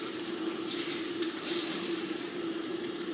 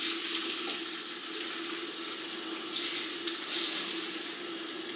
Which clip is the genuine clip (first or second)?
second